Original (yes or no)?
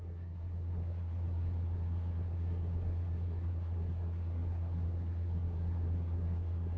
no